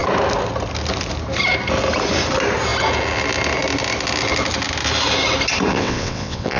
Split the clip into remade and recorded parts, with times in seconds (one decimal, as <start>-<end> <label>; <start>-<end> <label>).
0.0-5.7 recorded; 5.7-6.6 remade